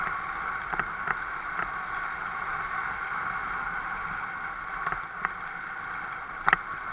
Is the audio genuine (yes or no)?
yes